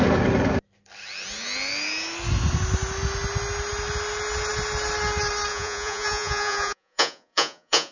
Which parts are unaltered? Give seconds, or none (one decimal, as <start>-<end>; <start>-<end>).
0.0-5.5